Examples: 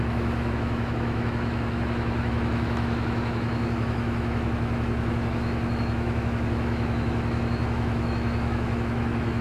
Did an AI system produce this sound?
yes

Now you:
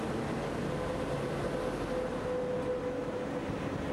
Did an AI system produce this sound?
no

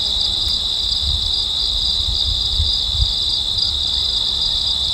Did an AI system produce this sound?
no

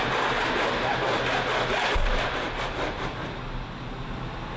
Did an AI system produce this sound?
no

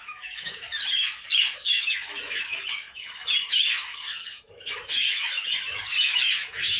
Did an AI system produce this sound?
yes